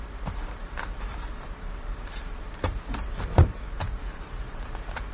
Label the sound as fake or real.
fake